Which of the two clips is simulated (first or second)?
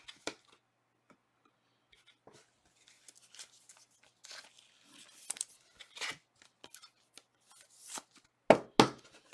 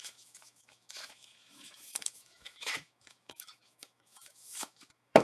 second